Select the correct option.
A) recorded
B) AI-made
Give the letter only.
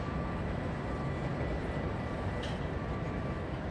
A